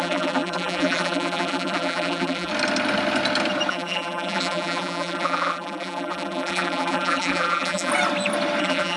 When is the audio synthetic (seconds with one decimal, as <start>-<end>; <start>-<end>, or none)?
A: 0.0-2.5; 3.7-7.9; 8.6-9.0